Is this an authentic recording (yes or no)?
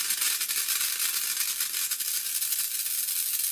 yes